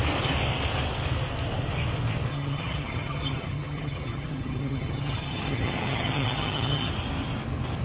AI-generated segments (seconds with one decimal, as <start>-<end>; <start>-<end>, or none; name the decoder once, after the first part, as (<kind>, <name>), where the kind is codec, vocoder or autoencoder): 2.3-6.9 (vocoder, HiFi-GAN)

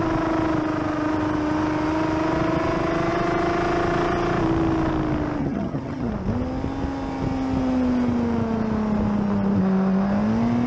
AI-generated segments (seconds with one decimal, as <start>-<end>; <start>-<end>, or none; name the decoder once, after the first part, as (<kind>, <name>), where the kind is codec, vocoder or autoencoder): 5.4-6.1 (vocoder, HiFi-GAN)